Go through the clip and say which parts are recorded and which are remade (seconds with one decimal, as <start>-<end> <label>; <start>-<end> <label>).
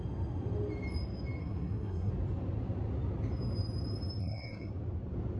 0.0-1.4 recorded; 1.4-2.1 remade; 2.1-4.2 recorded; 4.2-4.7 remade; 4.7-5.4 recorded